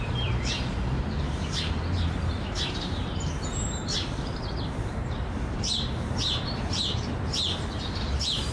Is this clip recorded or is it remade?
remade